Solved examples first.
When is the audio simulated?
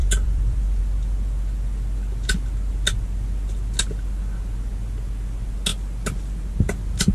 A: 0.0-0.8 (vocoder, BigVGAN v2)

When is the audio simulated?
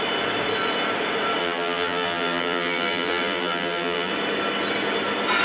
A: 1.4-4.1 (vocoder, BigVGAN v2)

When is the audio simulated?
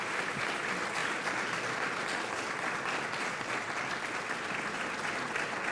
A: none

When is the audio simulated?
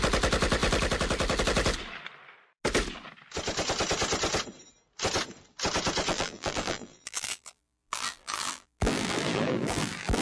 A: 6.1-10.2 (vocoder, BigVGAN v2)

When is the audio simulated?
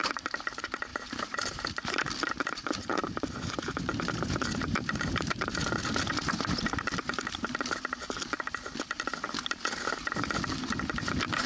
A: 0.9-1.8 (vocoder, BigVGAN v2); 2.6-7.8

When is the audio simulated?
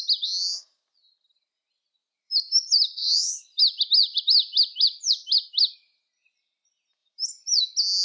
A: 2.0-3.6 (vocoder, BigVGAN v2); 4.0-5.4; 7.0-7.6